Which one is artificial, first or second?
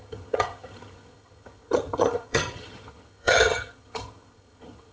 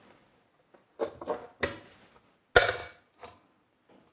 first